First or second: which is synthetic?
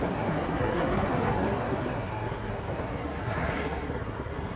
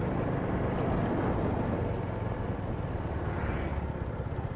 first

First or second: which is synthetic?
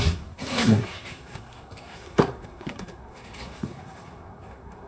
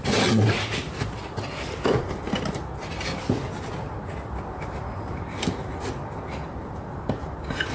first